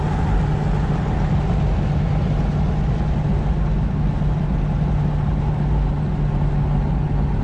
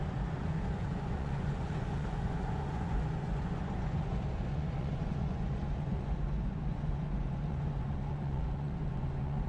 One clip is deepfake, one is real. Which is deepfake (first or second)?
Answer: second